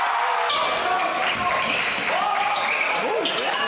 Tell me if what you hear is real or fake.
real